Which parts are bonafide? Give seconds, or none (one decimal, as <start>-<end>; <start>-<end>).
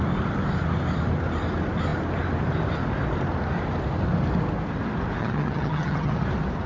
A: 0.0-5.2; 6.1-6.7